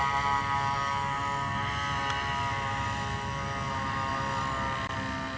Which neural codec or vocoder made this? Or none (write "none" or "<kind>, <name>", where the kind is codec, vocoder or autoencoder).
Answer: none